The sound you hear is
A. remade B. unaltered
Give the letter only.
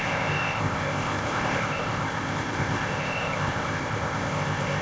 A